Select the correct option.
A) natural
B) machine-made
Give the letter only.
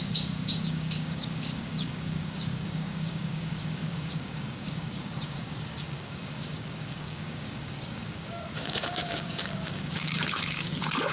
B